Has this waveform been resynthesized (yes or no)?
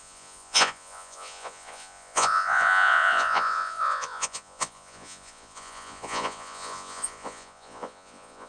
yes